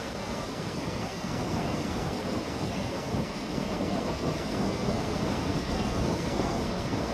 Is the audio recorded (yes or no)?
no